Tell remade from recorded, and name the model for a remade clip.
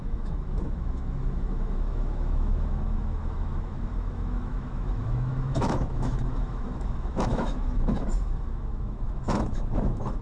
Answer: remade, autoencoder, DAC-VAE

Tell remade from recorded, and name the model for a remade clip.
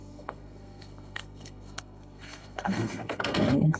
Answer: remade, codec, SNAC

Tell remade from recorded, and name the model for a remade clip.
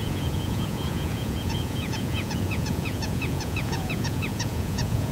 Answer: remade, vocoder, Vocos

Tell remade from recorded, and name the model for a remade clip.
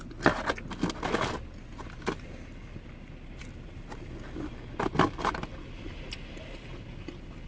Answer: recorded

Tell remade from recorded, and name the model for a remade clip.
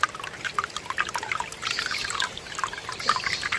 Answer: recorded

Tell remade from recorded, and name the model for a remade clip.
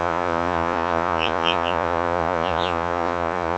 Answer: remade, vocoder, Vocos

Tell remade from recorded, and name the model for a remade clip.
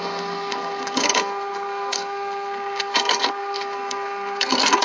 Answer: remade, codec, SNAC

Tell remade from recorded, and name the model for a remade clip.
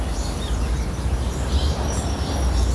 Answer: recorded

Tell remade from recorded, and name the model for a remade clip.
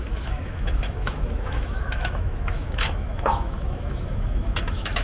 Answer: remade, autoencoder, DAC-VAE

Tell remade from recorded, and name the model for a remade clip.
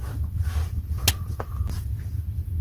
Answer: recorded